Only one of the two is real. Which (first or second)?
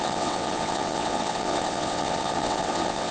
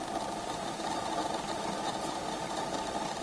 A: second